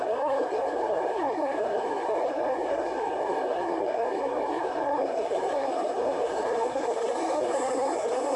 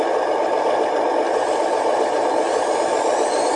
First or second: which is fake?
first